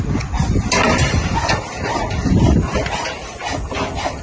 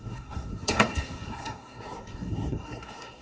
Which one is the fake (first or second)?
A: second